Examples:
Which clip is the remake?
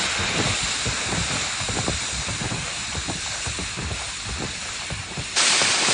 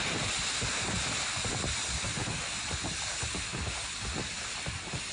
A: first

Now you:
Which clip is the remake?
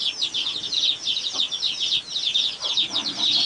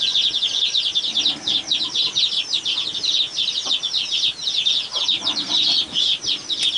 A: second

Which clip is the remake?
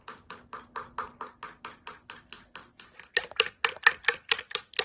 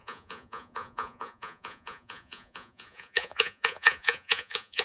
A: second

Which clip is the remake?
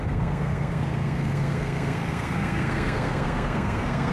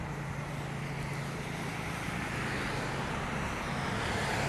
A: first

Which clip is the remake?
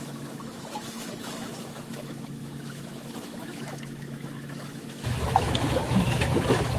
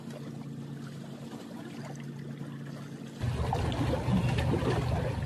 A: first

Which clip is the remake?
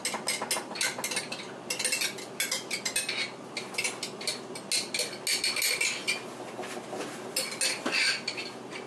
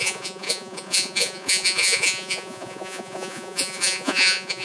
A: second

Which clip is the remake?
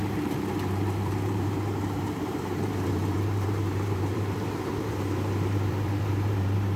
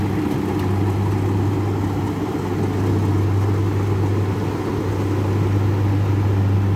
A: first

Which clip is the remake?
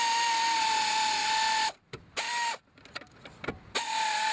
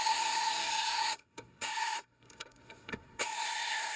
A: second